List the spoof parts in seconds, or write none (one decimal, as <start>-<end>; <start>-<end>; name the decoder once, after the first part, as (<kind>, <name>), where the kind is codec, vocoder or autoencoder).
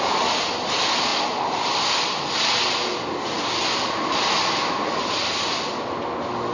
none